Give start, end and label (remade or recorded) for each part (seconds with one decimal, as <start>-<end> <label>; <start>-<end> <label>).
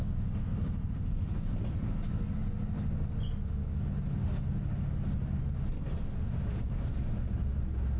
0.0-8.0 recorded